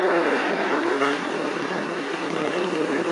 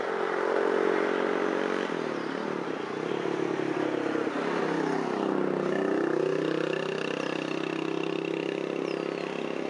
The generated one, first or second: first